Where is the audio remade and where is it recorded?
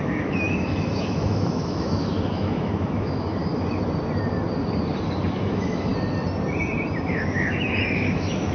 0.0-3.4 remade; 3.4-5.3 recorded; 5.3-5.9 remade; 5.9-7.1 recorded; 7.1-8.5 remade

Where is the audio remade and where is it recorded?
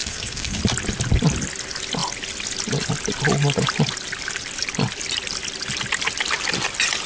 0.0-0.6 remade; 0.6-7.1 recorded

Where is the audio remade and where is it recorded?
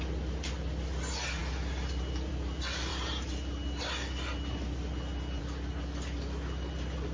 0.0-7.1 recorded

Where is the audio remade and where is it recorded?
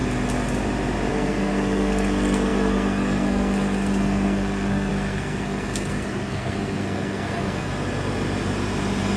0.0-1.1 recorded; 1.1-7.7 remade; 7.7-9.2 recorded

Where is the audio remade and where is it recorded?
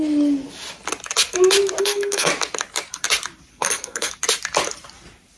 0.0-1.8 recorded; 1.8-2.3 remade; 2.3-3.5 recorded; 3.5-4.1 remade; 4.1-5.4 recorded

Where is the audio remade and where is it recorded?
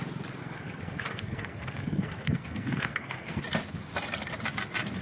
0.0-0.4 recorded; 0.4-3.4 remade; 3.4-5.0 recorded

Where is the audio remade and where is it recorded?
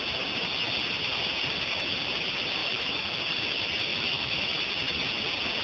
0.0-2.6 recorded; 2.6-3.2 remade; 3.2-3.9 recorded; 3.9-4.6 remade; 4.6-5.6 recorded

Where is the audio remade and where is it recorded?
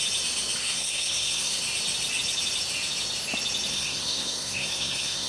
0.0-0.6 recorded; 0.6-1.6 remade; 1.6-3.7 recorded; 3.7-5.3 remade